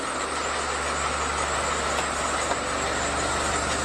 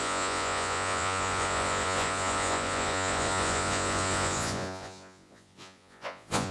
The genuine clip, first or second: first